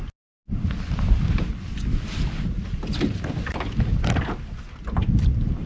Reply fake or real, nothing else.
real